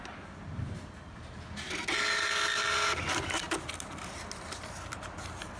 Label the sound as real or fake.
real